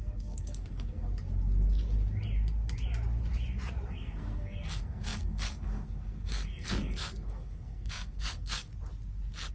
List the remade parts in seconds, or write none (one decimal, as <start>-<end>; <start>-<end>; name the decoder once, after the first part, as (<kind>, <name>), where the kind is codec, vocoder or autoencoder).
0.0-1.1 (codec, SNAC); 3.9-8.7